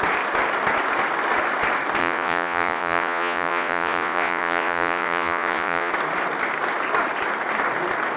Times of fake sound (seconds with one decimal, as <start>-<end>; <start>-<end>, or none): 2.0-5.9